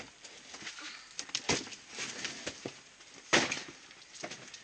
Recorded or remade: recorded